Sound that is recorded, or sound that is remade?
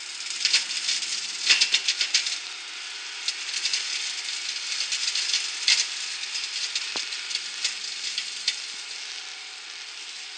recorded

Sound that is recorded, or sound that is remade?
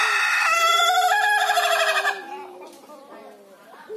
recorded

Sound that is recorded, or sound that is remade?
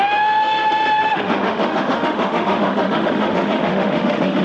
remade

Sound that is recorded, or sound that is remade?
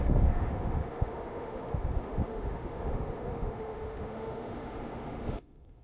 remade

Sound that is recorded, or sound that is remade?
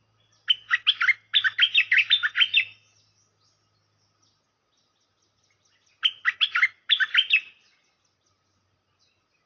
recorded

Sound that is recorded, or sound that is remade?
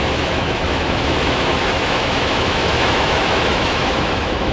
remade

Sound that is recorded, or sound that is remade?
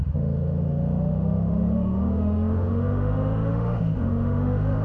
remade